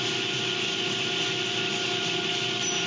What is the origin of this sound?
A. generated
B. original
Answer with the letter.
B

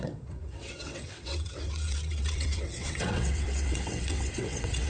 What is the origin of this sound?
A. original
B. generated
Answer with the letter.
B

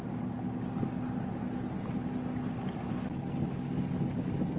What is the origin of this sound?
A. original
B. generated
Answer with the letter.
A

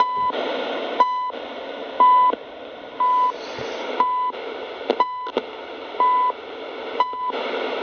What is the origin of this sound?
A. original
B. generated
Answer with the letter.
A